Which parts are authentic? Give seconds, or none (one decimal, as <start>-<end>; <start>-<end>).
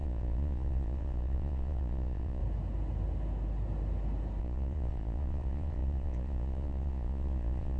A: 2.4-4.4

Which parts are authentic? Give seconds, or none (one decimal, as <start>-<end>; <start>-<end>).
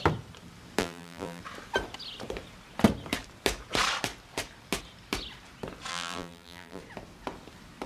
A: 0.0-0.8; 1.4-5.9; 6.8-7.9